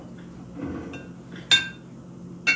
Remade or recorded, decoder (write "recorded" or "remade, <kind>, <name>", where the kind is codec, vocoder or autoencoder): recorded